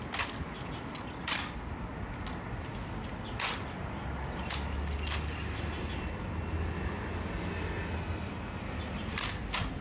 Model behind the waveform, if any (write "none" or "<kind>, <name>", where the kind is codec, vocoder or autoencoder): none